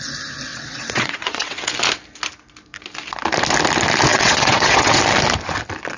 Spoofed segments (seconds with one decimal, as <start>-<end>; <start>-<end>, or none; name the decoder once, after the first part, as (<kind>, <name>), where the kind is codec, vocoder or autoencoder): 0.5-1.7 (vocoder, WaveNeXt); 4.1-5.0